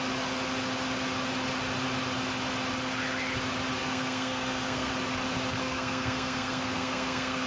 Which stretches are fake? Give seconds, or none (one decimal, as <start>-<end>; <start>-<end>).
3.8-4.9; 5.6-7.5